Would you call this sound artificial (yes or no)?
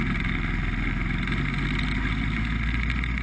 no